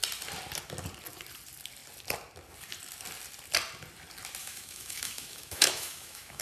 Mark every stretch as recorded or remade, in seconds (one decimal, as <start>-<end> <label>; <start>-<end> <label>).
0.0-4.4 recorded; 4.4-6.4 remade